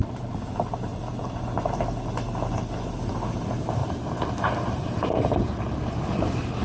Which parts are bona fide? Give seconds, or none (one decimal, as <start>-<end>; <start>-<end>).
0.9-3.0